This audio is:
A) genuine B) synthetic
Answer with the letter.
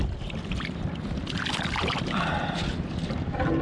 A